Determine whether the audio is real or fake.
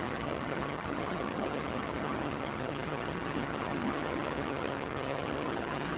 fake